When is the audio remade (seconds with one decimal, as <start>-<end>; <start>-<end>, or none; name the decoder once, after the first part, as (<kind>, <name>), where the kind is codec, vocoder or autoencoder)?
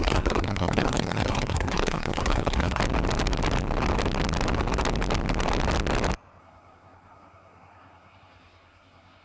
0.0-2.8 (codec, SNAC); 6.4-9.2